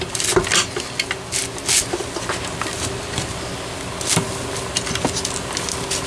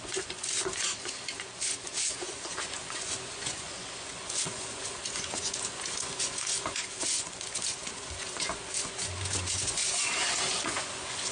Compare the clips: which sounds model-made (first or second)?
second